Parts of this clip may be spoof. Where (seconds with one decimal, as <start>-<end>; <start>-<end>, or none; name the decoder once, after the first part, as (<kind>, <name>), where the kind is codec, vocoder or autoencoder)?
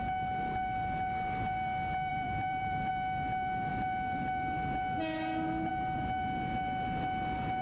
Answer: 2.1-2.9 (vocoder, BigVGAN v2)